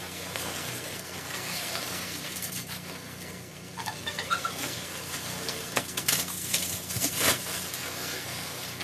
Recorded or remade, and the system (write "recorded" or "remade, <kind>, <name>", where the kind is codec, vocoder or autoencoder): remade, codec, SNAC